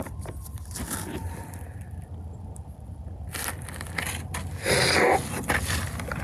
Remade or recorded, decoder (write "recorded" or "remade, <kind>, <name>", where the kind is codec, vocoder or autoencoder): recorded